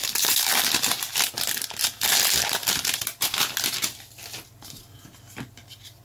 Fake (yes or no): no